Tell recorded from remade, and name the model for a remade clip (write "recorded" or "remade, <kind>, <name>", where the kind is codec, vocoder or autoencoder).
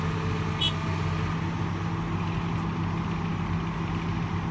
recorded